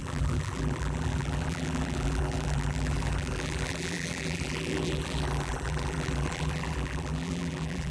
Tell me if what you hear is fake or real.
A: fake